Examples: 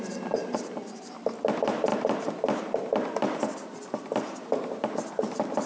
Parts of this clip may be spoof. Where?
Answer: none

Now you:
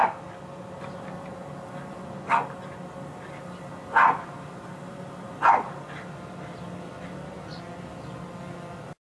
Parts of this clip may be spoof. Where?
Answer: none

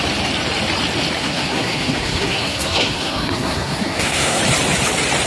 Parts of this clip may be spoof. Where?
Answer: 1.2-4.4 (codec, SNAC)

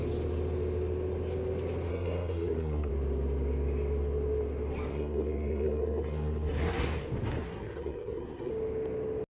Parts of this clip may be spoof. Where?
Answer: 1.9-2.9 (codec, SNAC); 4.9-7.0; 7.4-8.5

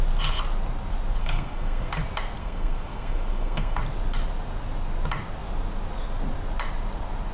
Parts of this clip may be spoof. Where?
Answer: 1.2-1.9 (codec, SNAC); 2.4-3.8

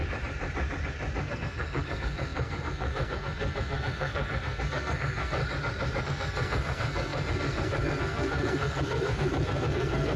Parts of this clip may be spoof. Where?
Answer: 1.2-5.4 (codec, SNAC); 6.0-10.2